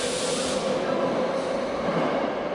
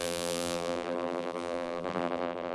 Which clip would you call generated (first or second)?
second